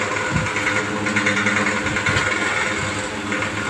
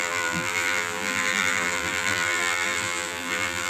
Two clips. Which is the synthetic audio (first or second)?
second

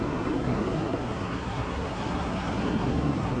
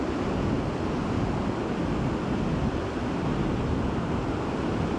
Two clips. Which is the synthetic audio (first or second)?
first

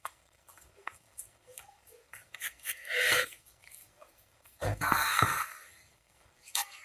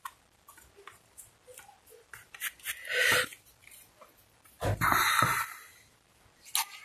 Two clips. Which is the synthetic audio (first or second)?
first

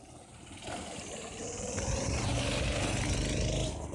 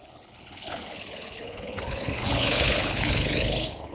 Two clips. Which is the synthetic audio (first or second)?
second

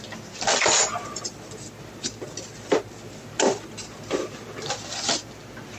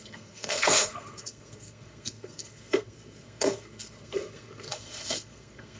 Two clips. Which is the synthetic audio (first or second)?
second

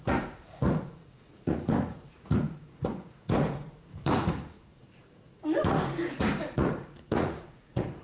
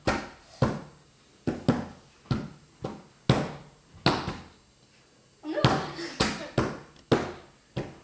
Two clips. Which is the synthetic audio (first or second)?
first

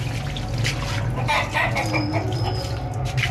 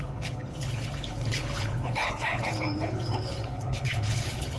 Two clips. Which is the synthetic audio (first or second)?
second